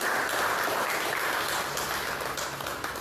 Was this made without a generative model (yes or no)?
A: yes